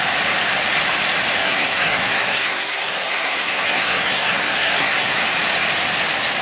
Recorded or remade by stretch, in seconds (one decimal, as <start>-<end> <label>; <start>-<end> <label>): 0.0-1.4 recorded; 1.4-5.2 remade; 5.2-6.4 recorded